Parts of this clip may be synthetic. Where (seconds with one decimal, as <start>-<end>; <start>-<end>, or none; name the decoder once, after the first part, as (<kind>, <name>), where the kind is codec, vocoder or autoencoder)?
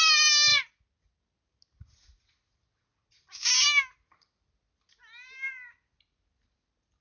none